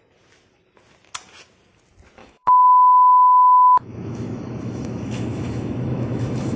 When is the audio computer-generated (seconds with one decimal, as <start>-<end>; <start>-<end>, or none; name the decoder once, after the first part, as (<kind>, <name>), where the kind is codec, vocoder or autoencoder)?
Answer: 2.2-6.6 (autoencoder, DAC-VAE)